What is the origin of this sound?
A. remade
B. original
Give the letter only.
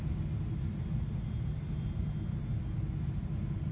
B